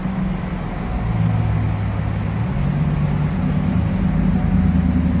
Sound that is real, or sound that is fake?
real